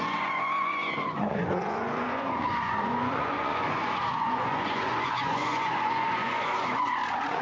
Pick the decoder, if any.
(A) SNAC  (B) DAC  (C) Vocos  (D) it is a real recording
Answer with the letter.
C